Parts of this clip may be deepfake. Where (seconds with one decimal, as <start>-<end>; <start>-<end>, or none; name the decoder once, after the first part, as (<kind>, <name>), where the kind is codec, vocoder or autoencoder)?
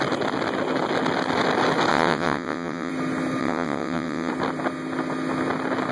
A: 1.9-2.9 (vocoder, WaveNeXt); 3.4-4.3